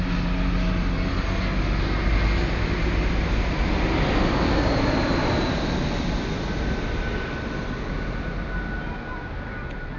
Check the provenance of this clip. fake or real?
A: real